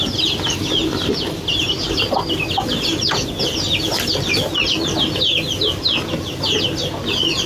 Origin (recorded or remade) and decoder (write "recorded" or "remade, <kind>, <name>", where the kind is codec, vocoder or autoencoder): recorded